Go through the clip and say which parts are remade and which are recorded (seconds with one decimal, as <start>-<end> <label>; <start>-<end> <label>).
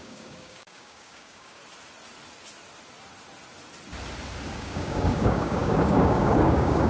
0.0-1.6 remade; 1.6-4.5 recorded; 4.5-6.9 remade